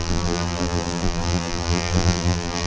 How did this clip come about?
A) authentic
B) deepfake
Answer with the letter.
B